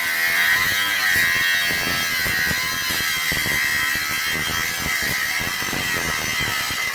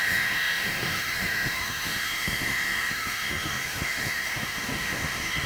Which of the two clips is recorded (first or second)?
first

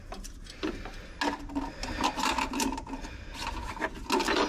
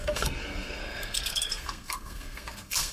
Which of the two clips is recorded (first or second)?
first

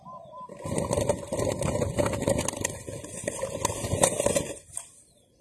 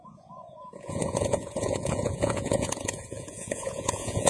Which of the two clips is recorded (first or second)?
first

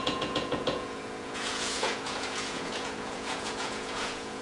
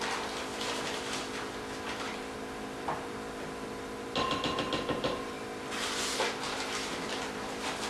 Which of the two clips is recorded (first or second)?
second